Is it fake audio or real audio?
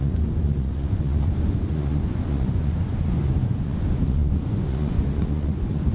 fake